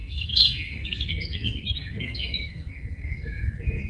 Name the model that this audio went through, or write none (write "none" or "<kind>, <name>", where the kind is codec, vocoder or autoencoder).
codec, SNAC